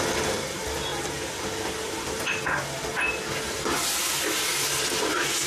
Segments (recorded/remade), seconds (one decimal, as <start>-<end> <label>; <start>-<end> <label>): 0.0-5.5 recorded